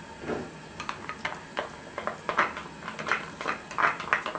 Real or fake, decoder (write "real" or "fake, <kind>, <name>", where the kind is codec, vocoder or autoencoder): real